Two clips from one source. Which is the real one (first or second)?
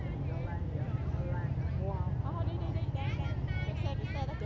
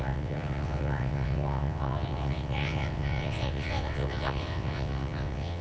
first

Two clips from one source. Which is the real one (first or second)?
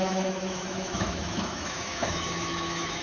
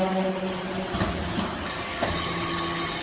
second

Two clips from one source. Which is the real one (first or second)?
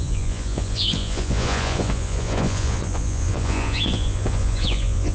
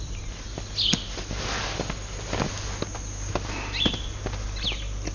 second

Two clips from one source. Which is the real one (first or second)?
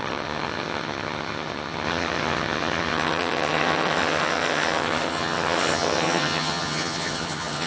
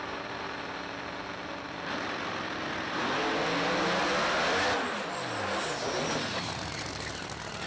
second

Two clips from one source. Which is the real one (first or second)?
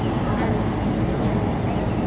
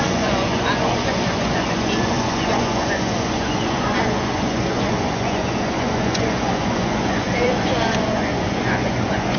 first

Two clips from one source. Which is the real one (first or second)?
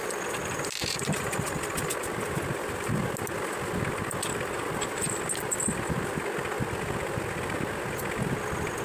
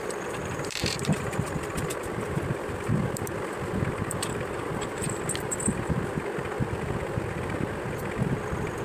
first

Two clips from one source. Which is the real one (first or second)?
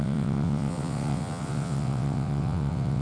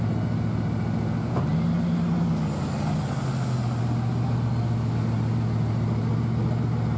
second